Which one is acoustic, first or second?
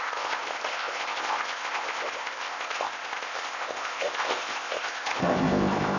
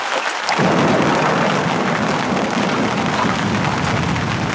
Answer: second